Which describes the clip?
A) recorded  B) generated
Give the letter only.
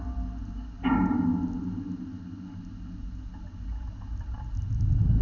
A